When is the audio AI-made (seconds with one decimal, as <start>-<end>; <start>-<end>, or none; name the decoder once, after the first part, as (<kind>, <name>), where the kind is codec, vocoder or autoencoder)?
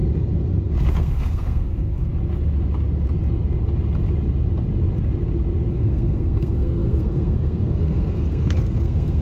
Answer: 0.9-2.1 (codec, SNAC); 5.7-9.2